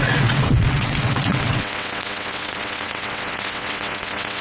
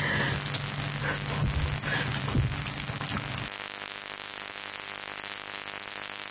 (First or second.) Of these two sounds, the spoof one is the first